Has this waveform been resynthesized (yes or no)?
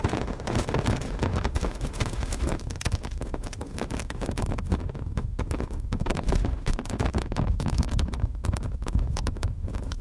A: yes